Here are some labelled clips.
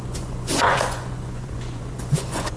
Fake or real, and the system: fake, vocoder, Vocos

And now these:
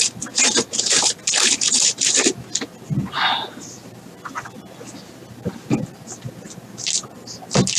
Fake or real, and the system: real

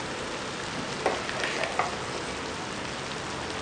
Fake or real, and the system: real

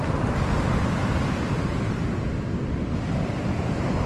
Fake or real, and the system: real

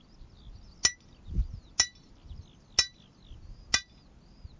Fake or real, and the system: real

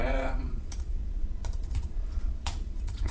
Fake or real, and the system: fake, vocoder, Vocos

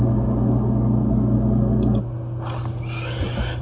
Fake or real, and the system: real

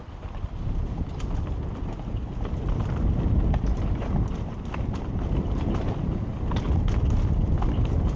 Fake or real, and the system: real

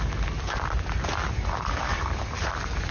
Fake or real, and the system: real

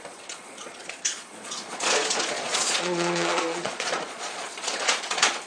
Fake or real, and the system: fake, vocoder, Vocos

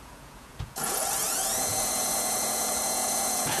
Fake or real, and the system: fake, vocoder, Vocos